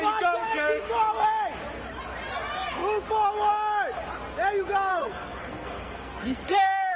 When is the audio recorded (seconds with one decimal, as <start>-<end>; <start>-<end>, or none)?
0.0-0.4; 0.9-4.9